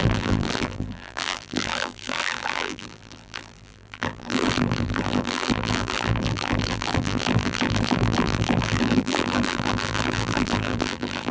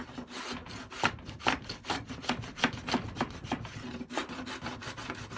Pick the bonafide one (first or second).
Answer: second